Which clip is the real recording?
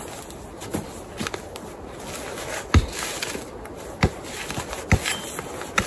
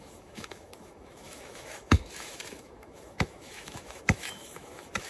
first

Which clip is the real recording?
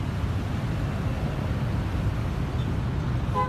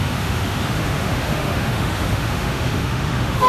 first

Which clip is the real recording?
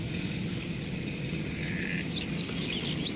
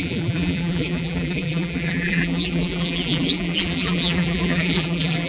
first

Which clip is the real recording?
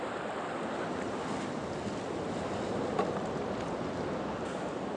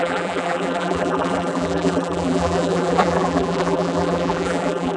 first